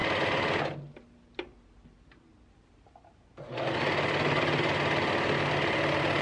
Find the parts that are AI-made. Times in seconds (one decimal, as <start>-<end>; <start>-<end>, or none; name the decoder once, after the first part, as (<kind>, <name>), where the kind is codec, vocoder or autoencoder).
none